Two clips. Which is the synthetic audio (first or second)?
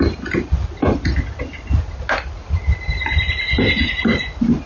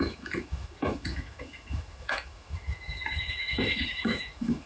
second